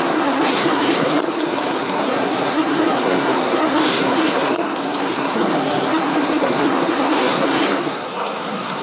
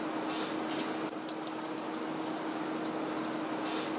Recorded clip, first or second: second